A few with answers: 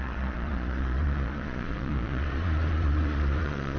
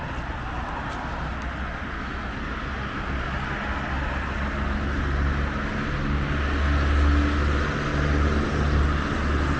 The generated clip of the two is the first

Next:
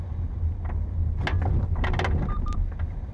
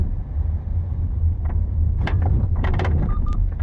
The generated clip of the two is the second